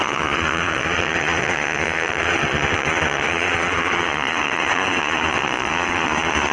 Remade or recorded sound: remade